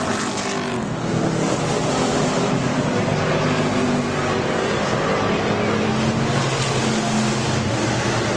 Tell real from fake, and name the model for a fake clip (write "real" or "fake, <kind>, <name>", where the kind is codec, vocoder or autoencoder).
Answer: real